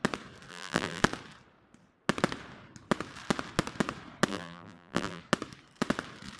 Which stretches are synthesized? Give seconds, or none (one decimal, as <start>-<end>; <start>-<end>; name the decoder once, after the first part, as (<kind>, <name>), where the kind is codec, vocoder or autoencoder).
0.5-1.0 (vocoder, BigVGAN v2); 4.3-5.2